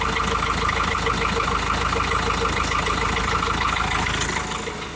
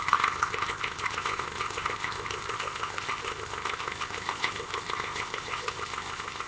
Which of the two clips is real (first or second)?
first